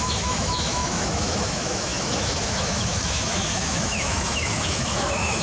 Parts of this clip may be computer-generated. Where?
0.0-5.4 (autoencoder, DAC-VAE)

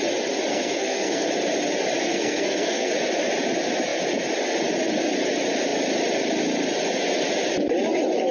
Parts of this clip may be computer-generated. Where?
0.5-1.3 (codec, SNAC); 2.1-2.9

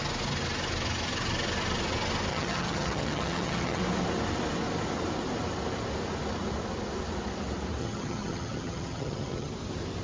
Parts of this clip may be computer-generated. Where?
2.3-3.8 (vocoder, HiFi-GAN); 7.8-9.5